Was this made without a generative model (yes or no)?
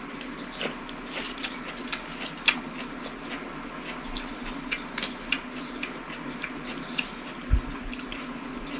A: yes